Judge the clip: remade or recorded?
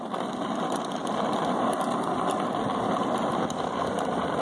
recorded